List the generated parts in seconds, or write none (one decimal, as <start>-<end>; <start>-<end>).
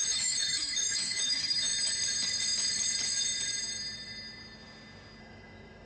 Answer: 0.0-1.7; 5.2-5.8